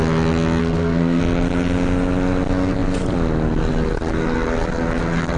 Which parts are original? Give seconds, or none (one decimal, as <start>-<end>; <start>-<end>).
0.0-0.6; 1.2-5.4